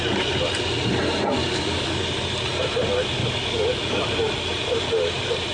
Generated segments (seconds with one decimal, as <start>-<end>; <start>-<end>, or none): 1.4-2.0; 3.2-4.0